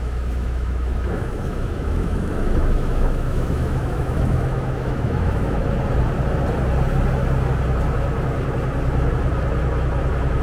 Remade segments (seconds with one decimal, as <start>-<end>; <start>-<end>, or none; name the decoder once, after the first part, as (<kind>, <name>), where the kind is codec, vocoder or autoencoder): 0.0-5.6 (autoencoder, DAC-VAE)